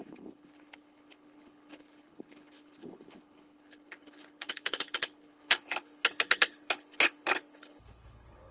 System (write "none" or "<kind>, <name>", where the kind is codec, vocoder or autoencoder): codec, HILCodec